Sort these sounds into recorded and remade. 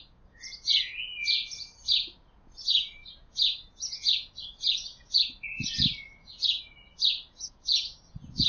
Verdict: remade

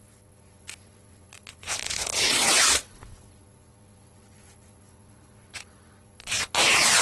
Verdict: remade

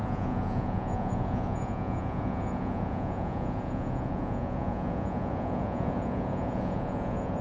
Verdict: remade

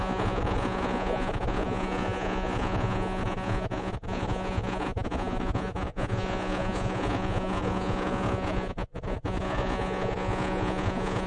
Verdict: remade